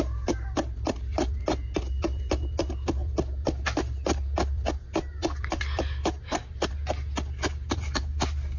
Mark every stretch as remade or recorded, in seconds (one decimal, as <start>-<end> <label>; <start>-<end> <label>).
0.0-8.6 recorded